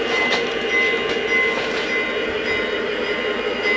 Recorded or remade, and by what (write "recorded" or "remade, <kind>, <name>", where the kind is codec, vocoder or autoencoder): recorded